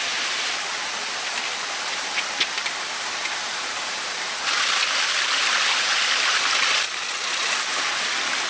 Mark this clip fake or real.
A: real